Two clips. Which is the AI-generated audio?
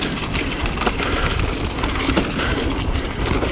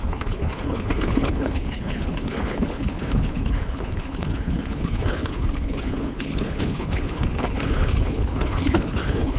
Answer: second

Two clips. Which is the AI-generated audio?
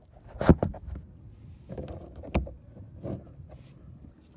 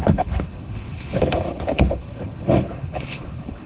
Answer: second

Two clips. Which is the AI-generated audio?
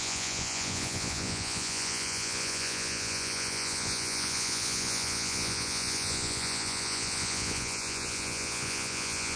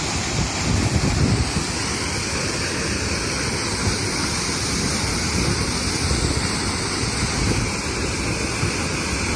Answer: first